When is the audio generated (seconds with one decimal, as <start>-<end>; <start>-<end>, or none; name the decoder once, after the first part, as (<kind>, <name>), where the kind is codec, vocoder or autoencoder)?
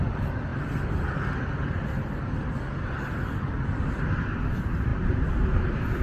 4.9-6.0 (vocoder, BigVGAN v2)